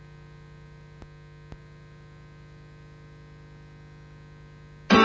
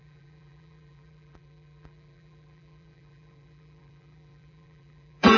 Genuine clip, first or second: first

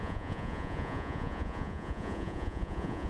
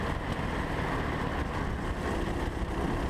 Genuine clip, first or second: second